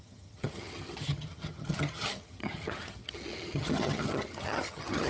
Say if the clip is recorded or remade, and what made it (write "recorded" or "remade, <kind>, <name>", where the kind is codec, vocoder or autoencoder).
remade, vocoder, HiFi-GAN